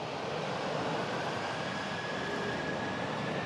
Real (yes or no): yes